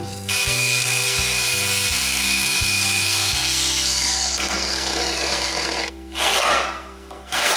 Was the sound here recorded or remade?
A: remade